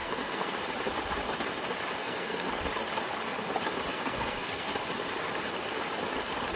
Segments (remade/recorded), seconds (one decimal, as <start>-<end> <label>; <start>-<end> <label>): 0.0-0.6 remade; 0.6-2.0 recorded; 2.0-2.6 remade; 2.6-3.9 recorded; 3.9-4.7 remade; 4.7-6.6 recorded